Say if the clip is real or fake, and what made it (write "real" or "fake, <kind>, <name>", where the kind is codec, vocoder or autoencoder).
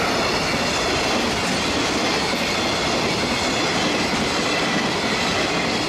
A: real